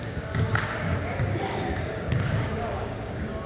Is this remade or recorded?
remade